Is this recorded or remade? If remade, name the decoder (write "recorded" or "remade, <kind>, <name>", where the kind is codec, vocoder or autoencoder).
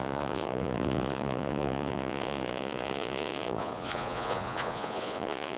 remade, vocoder, Vocos